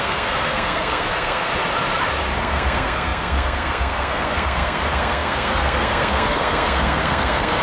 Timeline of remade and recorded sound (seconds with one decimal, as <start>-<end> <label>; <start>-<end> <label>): 0.0-1.5 remade; 1.5-2.4 recorded; 2.4-7.6 remade